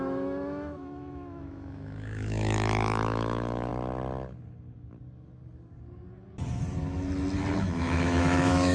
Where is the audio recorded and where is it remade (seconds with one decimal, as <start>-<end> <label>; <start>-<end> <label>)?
0.0-3.7 remade; 3.7-7.6 recorded; 7.6-8.7 remade